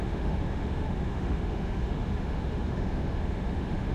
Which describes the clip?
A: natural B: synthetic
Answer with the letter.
B